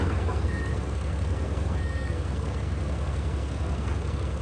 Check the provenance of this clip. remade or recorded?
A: remade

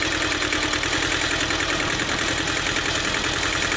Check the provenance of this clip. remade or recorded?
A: recorded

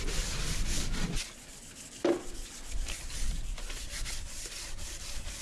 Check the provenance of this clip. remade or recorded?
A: recorded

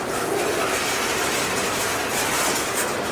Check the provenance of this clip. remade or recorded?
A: recorded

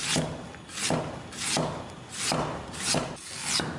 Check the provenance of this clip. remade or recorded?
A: recorded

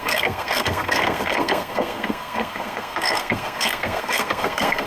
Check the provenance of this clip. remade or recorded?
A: remade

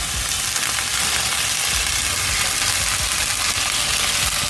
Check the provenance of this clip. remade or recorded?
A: recorded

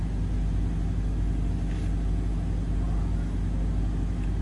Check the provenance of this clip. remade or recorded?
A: recorded